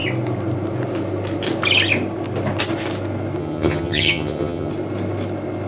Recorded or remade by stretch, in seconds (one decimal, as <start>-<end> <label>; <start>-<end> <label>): 0.0-3.4 recorded; 3.4-4.7 remade; 4.7-5.7 recorded